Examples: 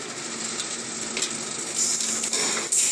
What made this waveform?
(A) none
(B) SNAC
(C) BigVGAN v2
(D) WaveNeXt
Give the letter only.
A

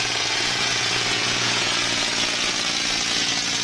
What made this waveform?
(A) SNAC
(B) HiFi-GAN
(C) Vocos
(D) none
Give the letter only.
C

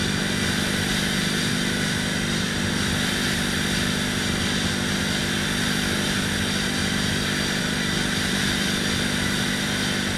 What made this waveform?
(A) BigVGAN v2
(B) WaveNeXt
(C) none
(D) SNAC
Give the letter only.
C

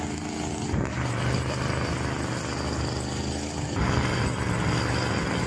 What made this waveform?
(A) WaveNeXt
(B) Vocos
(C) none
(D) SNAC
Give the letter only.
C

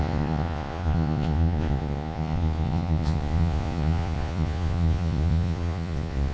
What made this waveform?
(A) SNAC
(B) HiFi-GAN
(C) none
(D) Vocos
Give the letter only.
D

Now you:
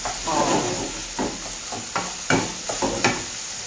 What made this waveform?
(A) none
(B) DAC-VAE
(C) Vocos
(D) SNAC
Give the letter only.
A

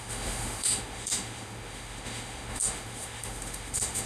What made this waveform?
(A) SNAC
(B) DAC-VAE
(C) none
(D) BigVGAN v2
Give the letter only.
B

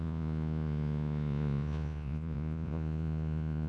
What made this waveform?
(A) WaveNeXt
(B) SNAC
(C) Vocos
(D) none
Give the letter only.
C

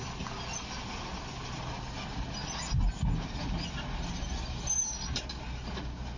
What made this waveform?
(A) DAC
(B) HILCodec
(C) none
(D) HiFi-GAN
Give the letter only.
C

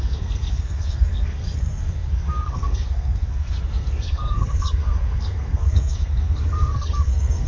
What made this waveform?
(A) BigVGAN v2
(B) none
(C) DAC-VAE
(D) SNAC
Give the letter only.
D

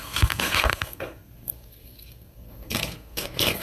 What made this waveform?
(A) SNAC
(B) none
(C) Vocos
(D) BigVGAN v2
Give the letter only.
A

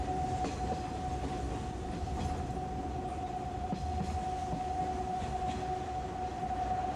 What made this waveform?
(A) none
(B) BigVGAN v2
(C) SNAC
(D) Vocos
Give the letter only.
A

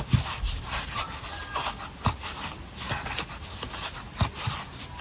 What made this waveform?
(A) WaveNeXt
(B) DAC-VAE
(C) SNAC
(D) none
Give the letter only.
D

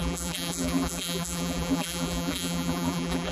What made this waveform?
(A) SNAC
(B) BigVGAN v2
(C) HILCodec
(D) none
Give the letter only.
B